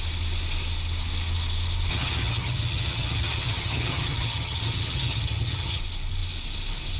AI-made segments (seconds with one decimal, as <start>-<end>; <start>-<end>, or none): 1.9-5.8